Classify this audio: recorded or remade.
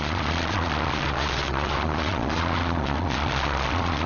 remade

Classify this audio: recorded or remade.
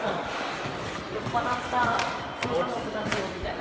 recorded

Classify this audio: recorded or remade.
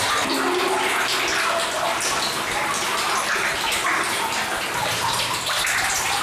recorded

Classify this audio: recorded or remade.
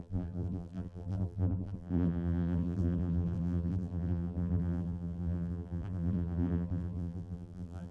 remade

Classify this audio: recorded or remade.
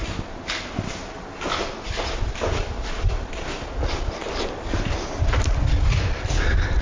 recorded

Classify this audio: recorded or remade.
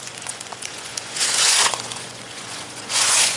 remade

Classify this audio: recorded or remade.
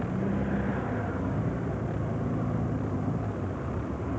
recorded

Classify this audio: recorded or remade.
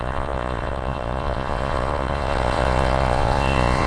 remade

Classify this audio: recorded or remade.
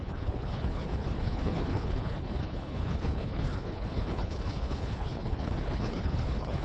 remade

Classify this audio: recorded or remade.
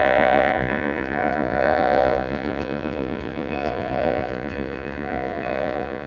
remade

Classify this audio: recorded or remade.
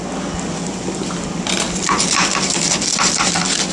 recorded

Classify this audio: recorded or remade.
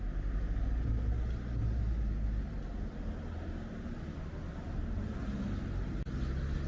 recorded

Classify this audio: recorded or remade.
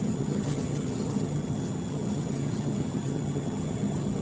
remade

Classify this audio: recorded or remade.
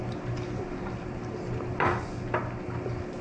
recorded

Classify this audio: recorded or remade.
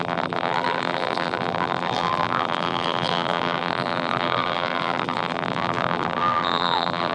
remade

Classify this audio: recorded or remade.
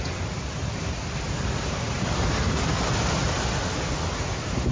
recorded